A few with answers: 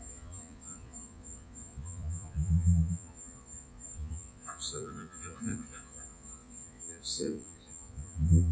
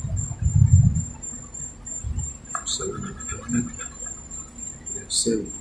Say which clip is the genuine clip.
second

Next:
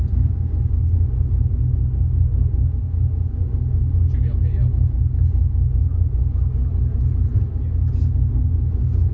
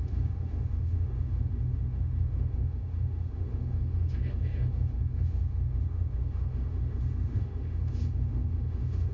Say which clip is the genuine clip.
first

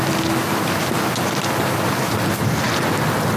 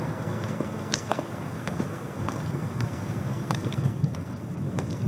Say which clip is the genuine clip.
first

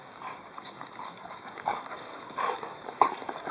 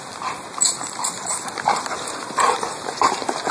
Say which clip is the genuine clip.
second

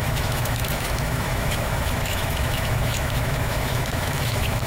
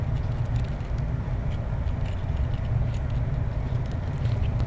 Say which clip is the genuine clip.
second